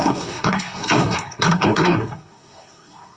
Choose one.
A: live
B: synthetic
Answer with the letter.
B